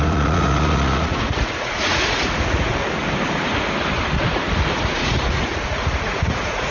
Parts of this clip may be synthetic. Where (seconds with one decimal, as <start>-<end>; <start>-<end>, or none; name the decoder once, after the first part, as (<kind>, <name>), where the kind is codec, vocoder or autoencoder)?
0.0-2.7 (vocoder, Vocos); 4.6-6.7